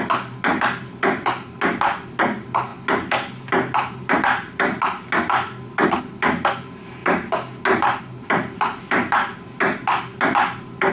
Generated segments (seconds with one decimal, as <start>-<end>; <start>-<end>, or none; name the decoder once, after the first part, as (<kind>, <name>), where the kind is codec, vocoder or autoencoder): none